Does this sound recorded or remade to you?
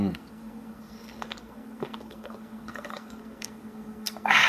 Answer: remade